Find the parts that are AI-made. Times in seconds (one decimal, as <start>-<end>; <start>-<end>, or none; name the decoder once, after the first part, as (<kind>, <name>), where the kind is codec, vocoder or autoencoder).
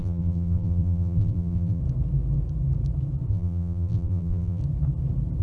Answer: 0.0-1.8 (vocoder, BigVGAN v2); 3.3-4.6